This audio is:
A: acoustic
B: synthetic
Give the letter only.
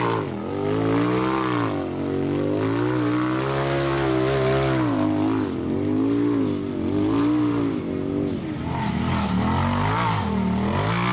A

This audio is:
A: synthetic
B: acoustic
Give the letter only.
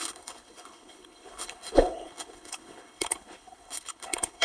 A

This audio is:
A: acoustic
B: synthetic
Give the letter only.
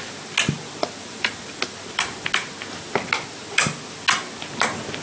A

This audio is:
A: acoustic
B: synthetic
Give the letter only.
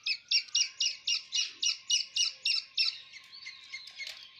A